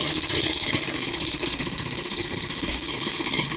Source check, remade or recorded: remade